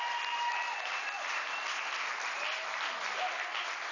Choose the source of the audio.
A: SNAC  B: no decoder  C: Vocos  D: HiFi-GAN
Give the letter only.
B